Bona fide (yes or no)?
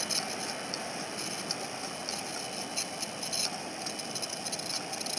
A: yes